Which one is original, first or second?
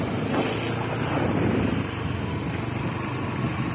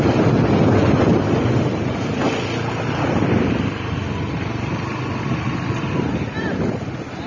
first